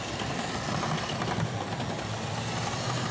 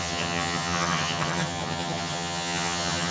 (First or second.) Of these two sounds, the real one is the first